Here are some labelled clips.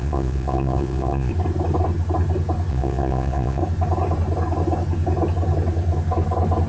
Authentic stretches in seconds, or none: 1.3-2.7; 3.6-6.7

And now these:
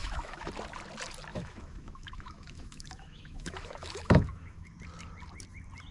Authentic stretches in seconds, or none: 0.5-1.3; 4.8-5.9

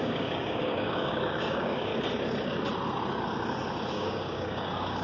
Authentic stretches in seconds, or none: 1.9-3.9

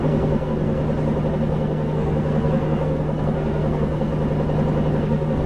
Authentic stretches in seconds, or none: 0.8-1.3; 4.1-5.0

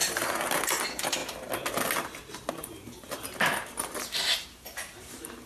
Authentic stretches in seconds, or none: 1.2-2.5

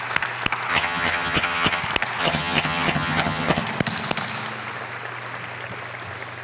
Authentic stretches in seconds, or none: 0.0-0.7; 1.8-2.2; 3.6-6.4